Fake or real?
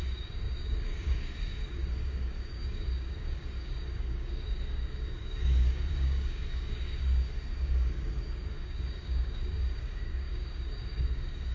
fake